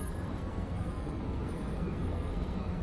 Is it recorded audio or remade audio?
remade